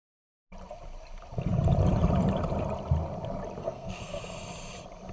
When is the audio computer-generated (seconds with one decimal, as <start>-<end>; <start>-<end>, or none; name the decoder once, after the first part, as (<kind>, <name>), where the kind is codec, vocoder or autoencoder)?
3.6-4.2 (codec, SNAC)

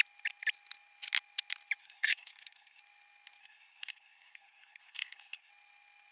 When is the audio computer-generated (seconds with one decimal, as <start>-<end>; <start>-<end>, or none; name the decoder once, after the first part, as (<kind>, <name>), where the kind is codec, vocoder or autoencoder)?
1.8-2.8 (codec, SNAC); 3.4-5.5

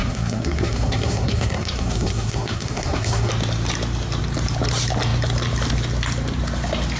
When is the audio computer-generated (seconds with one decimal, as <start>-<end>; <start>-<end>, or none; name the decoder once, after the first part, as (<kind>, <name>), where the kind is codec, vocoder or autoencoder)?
0.0-3.3 (codec, SNAC)

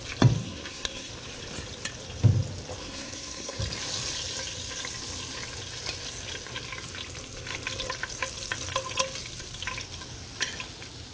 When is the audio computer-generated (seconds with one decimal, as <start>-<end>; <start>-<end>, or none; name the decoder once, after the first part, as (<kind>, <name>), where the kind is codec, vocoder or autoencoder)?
0.4-1.1 (codec, SNAC); 2.8-3.6

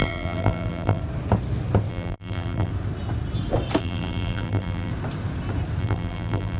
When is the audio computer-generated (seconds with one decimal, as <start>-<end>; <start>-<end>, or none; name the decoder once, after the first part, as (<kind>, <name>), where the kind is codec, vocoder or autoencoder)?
0.0-1.0 (vocoder, BigVGAN v2); 1.9-2.7; 3.8-4.9; 5.8-6.6

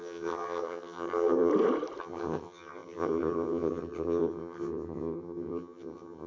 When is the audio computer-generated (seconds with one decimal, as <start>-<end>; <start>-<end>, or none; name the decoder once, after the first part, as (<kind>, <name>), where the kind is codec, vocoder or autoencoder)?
0.0-1.5 (vocoder, HiFi-GAN); 2.0-6.3

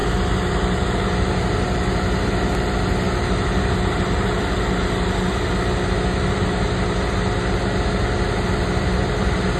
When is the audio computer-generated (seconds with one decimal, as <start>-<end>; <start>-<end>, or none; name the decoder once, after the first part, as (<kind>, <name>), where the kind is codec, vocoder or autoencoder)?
none